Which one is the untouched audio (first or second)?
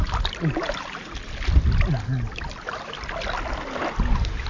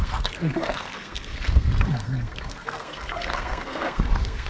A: first